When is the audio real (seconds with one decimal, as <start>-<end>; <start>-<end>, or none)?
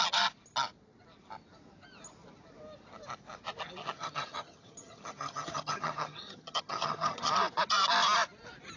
0.0-3.8; 7.3-8.8